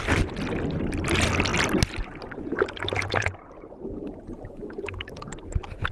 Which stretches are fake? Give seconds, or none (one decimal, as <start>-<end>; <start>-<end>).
none